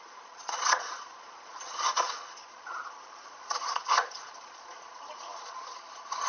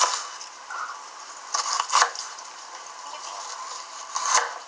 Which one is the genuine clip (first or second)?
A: second